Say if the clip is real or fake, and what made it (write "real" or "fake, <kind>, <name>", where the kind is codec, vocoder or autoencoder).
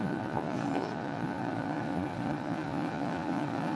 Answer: fake, vocoder, Vocos